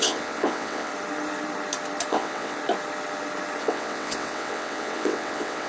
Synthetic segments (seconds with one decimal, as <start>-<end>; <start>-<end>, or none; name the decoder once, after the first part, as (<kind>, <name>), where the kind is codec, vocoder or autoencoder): 0.0-0.9 (vocoder, WaveNeXt); 2.1-2.6; 3.6-5.7